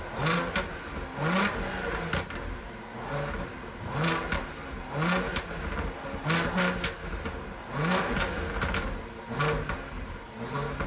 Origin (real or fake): real